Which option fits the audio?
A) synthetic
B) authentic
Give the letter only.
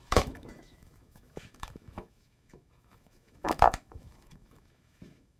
A